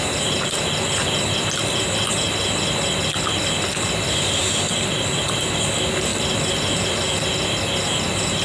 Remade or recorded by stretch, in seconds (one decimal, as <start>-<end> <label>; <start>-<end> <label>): 0.0-8.4 recorded